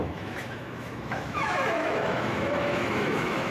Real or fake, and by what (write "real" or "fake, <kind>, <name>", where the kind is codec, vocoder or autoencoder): fake, autoencoder, DAC-VAE